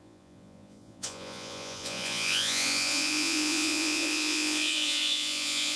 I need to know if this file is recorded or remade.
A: remade